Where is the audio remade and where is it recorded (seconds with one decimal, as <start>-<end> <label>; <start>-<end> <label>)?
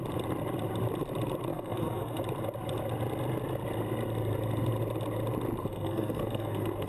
0.0-1.5 recorded; 1.5-2.2 remade; 2.2-5.6 recorded; 5.6-6.9 remade